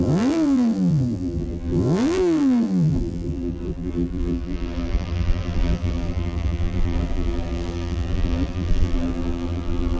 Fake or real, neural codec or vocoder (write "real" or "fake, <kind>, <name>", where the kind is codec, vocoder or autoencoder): fake, vocoder, BigVGAN v2